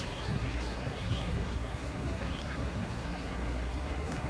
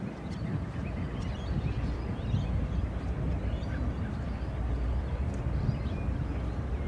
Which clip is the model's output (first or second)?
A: first